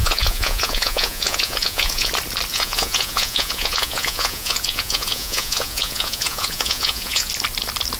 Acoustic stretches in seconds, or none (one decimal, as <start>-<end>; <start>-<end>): 2.1-2.5; 7.3-8.0